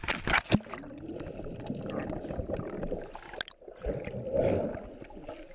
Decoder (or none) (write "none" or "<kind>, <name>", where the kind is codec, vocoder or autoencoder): none